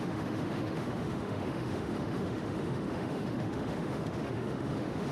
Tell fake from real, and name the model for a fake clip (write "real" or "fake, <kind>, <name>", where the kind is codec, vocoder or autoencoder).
fake, autoencoder, DAC-VAE